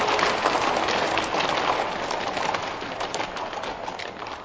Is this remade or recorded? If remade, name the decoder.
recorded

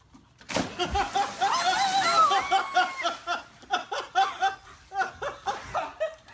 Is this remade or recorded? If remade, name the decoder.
recorded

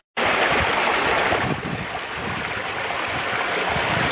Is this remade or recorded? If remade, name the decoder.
recorded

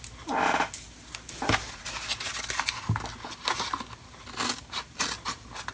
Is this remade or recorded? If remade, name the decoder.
recorded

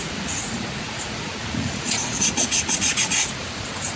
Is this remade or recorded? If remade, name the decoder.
remade, vocoder, Vocos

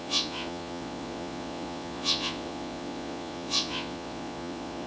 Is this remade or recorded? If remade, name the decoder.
remade, vocoder, Vocos